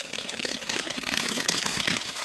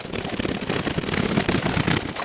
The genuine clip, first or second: second